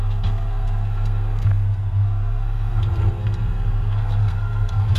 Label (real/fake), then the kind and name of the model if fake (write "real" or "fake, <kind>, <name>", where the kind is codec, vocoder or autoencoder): fake, codec, SNAC